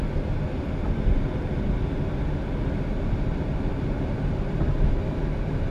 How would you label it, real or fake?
real